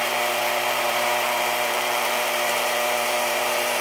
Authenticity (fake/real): fake